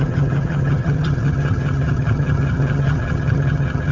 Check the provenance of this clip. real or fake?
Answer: fake